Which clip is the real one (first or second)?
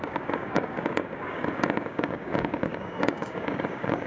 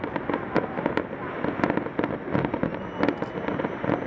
second